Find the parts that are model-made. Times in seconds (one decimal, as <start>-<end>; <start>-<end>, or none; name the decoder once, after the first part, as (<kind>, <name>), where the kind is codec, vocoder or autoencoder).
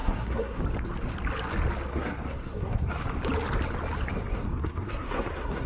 0.0-0.6 (codec, SNAC); 1.9-3.0; 4.1-5.7